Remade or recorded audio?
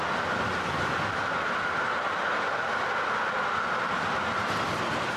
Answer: recorded